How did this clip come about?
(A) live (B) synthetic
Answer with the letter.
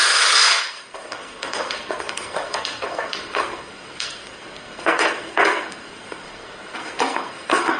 B